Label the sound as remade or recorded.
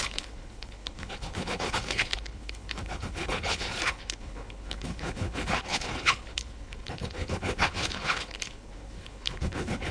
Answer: remade